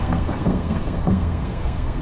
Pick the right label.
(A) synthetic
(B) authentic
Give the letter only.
A